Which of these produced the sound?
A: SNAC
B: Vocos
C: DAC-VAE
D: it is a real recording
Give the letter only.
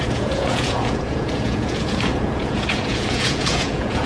B